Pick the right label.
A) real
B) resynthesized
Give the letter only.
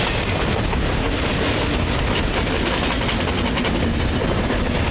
A